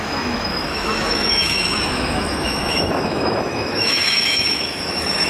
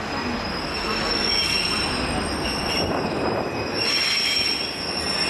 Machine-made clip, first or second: first